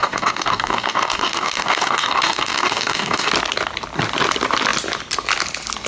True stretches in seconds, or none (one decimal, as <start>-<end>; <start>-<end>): 3.3-5.9